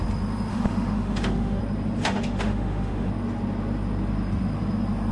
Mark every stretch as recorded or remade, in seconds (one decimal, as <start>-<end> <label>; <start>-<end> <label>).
0.0-0.5 recorded; 0.5-1.6 remade; 1.6-2.0 recorded; 2.0-3.1 remade; 3.1-5.1 recorded

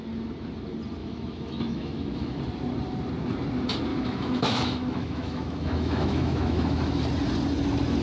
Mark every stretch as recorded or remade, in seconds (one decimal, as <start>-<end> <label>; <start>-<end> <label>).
0.0-1.0 recorded; 1.0-2.4 remade; 2.4-3.9 recorded; 3.9-7.0 remade; 7.0-8.0 recorded

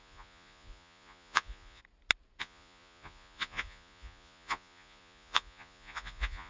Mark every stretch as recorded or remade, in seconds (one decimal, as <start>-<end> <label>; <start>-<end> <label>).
0.0-1.8 remade; 1.8-2.4 recorded; 2.4-6.5 remade

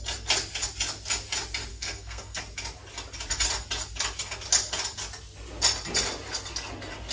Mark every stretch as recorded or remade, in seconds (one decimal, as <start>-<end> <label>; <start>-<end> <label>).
0.0-1.7 recorded; 1.7-2.4 remade; 2.4-7.1 recorded

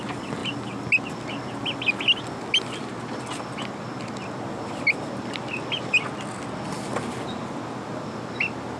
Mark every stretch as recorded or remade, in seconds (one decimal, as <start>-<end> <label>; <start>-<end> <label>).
0.0-8.8 recorded

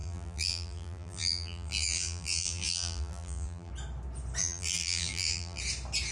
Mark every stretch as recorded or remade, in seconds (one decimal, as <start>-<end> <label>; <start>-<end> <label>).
0.0-3.7 remade; 3.7-4.4 recorded; 4.4-5.6 remade; 5.6-6.1 recorded

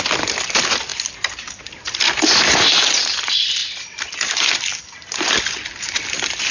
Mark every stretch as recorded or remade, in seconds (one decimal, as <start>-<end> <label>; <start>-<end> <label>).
0.0-6.5 recorded